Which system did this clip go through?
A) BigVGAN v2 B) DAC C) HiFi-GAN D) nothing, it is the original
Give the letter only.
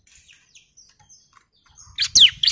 D